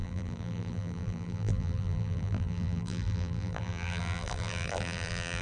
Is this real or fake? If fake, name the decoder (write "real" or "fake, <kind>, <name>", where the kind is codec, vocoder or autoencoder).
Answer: fake, vocoder, BigVGAN v2